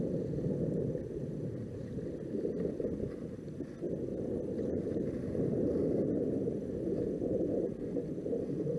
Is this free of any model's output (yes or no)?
yes